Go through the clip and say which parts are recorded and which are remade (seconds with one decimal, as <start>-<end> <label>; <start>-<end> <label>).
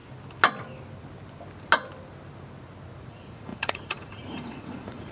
0.0-3.1 recorded; 3.1-5.1 remade